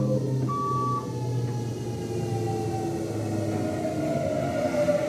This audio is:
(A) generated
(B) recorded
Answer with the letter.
B